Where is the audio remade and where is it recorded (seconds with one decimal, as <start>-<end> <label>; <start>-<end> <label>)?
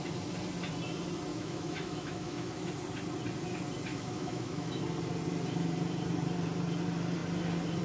0.0-1.3 recorded; 1.3-2.7 remade; 2.7-3.9 recorded; 3.9-4.8 remade; 4.8-7.8 recorded